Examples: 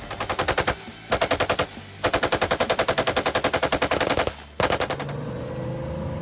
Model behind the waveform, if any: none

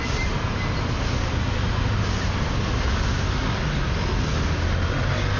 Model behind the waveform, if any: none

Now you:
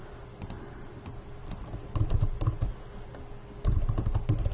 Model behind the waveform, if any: none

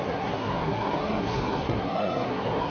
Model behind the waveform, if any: codec, SNAC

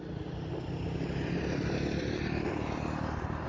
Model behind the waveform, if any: none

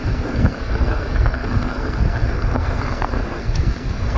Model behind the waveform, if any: codec, SNAC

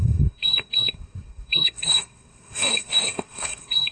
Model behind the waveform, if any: codec, SNAC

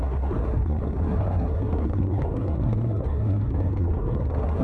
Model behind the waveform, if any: codec, SNAC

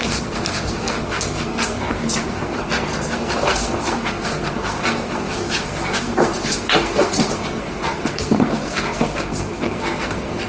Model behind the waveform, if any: codec, SNAC